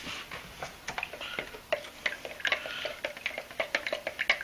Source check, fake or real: real